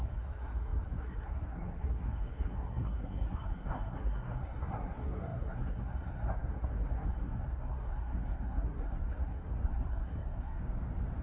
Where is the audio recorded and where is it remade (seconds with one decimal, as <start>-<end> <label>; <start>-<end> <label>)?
0.0-10.6 remade; 10.6-11.2 recorded